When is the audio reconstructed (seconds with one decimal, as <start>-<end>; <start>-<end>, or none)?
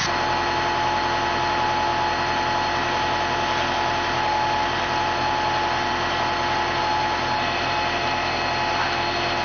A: none